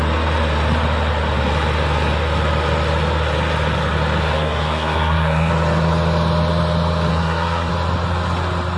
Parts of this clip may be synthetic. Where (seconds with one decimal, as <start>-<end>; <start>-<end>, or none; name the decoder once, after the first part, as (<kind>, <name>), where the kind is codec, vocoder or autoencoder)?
4.3-5.5 (codec, SNAC); 7.1-7.7